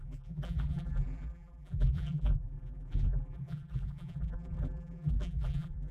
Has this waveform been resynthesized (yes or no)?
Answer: yes